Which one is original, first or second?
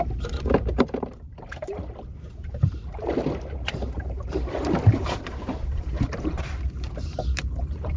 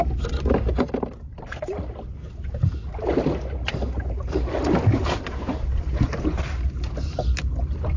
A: second